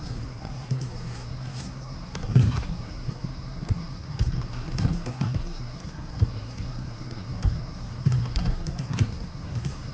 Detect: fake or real fake